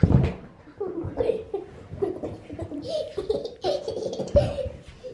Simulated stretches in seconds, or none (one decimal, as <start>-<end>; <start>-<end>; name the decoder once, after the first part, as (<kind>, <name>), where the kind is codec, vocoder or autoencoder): none